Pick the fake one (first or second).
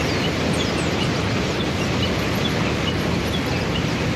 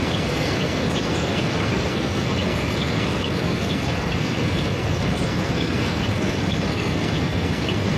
second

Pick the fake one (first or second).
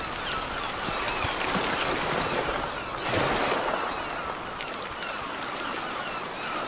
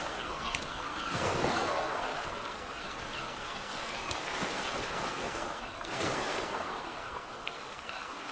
second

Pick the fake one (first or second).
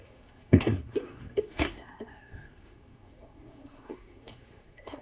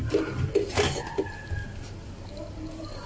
first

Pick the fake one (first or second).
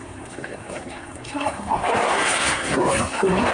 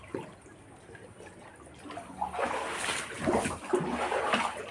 first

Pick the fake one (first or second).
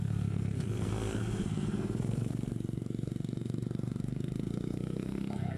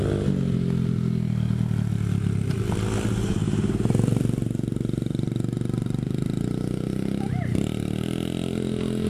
first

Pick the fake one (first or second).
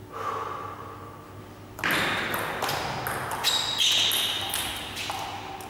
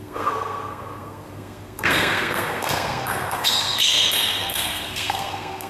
second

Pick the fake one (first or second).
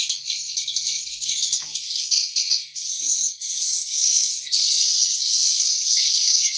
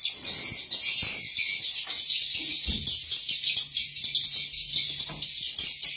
first